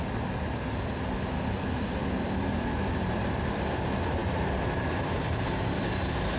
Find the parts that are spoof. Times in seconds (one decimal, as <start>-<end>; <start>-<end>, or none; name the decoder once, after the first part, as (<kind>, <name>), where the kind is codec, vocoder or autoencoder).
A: none